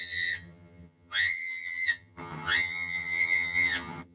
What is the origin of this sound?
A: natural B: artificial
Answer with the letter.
B